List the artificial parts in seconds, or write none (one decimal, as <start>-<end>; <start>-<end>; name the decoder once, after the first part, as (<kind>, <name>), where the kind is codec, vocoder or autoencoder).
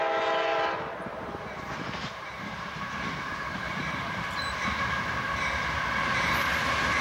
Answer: 0.5-2.8 (vocoder, BigVGAN v2); 3.6-4.5